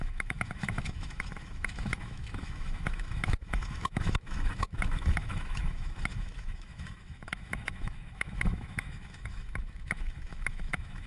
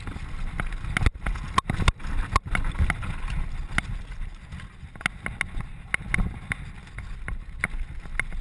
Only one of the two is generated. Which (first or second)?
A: first